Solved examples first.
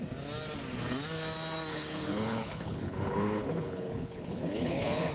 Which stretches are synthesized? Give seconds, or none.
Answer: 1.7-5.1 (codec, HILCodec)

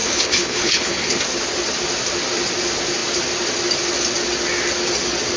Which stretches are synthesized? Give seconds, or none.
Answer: 0.0-1.2 (codec, HILCodec)

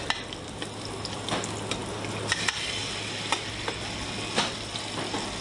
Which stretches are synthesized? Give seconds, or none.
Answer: none

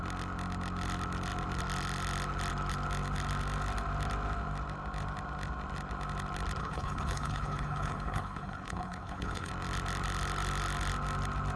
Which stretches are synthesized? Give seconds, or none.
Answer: 6.6-9.5 (codec, HILCodec)

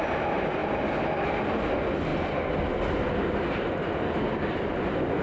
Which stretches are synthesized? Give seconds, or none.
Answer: none

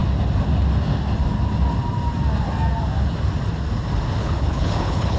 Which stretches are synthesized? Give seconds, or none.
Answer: 4.2-5.2 (codec, HILCodec)